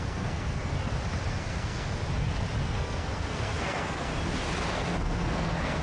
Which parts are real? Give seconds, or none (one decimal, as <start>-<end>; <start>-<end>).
0.7-1.3; 2.0-2.6; 4.1-4.7